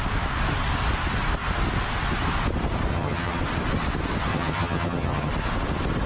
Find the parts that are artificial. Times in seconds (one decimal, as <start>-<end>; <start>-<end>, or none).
2.9-3.4; 4.3-5.3